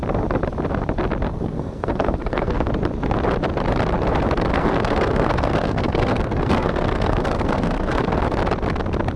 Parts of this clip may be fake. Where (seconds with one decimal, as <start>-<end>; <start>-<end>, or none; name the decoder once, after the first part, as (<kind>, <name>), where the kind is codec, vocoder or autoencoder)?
1.3-2.7 (codec, SNAC); 4.5-8.1